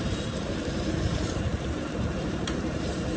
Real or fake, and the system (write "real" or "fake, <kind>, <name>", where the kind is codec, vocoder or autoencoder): fake, vocoder, BigVGAN v2